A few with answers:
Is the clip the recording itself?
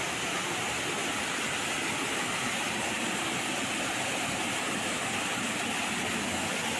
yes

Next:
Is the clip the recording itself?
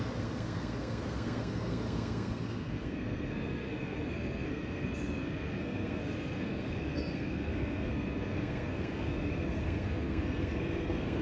no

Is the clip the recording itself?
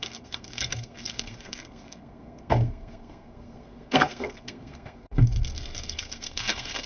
no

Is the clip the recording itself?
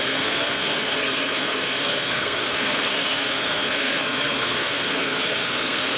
no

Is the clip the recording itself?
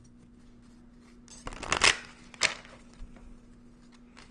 yes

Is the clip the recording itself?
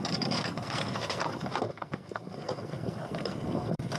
no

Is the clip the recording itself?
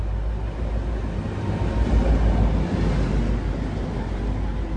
yes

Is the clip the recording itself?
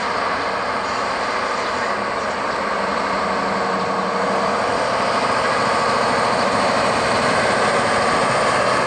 yes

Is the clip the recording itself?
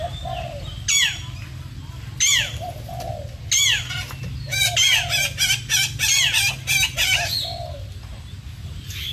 yes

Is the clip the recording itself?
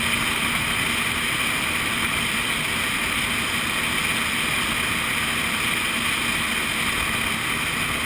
yes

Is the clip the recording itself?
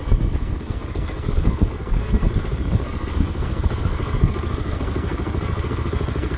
no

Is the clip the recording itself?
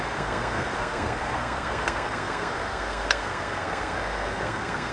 no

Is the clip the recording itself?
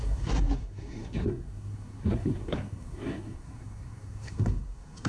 no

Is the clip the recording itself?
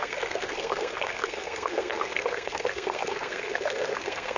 no